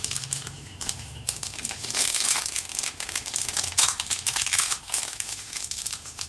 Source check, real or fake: fake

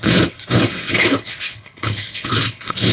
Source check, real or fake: fake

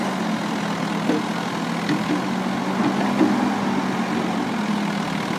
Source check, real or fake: real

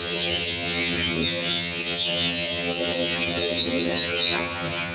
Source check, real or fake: fake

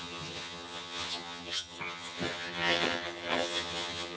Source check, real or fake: fake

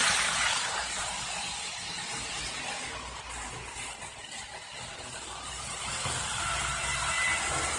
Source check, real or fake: real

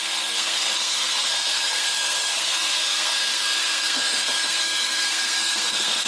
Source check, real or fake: fake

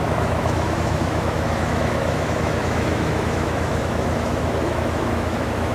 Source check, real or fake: fake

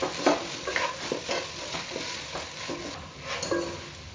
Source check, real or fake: real